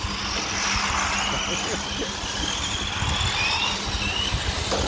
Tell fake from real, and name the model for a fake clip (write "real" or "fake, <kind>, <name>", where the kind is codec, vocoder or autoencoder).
real